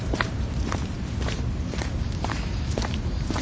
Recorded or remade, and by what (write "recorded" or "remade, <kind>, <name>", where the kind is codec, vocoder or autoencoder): remade, vocoder, BigVGAN v2